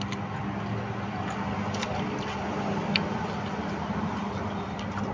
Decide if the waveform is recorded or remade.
recorded